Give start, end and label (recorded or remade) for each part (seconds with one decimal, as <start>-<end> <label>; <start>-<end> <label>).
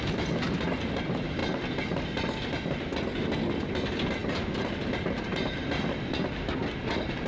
0.0-7.3 recorded